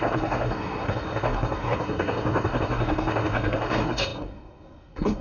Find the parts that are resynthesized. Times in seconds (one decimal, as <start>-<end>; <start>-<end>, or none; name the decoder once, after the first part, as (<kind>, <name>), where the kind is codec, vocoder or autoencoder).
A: 0.0-5.2 (codec, SNAC)